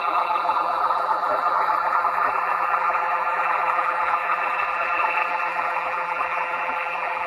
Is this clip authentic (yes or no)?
no